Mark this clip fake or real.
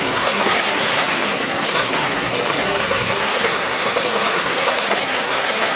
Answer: fake